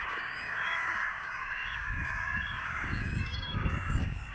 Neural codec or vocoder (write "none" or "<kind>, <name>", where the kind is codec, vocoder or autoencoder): codec, DAC